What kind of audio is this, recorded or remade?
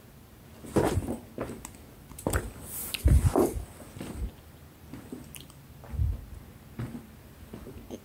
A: recorded